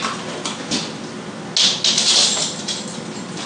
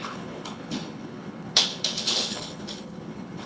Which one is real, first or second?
first